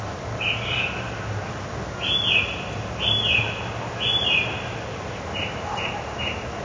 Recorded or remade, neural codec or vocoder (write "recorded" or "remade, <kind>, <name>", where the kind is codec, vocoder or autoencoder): recorded